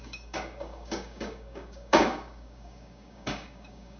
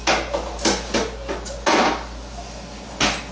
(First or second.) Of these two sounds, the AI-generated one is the first